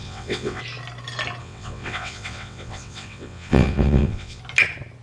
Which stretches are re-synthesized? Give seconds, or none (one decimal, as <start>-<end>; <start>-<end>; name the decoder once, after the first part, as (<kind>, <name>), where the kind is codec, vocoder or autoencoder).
0.0-0.6 (vocoder, WaveNeXt); 1.4-4.4